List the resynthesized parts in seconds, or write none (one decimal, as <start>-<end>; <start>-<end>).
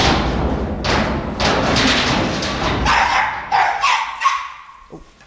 none